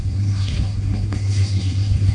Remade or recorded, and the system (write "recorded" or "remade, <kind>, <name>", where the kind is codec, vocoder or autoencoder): remade, codec, SNAC